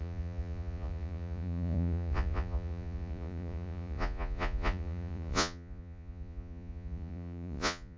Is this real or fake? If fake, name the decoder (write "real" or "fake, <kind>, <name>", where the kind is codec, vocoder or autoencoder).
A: fake, vocoder, Vocos